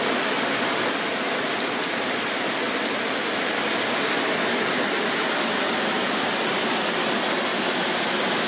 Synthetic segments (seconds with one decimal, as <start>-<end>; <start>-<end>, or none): none